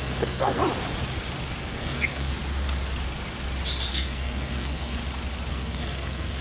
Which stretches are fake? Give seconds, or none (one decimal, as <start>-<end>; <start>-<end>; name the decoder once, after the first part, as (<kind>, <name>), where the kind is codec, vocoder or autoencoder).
0.0-0.6 (codec, SNAC); 1.6-2.3; 3.9-5.0; 5.5-6.4